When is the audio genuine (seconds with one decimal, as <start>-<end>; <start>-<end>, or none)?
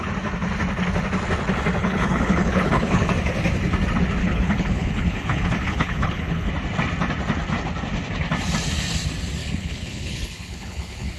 0.0-1.8; 3.1-4.2; 6.5-9.4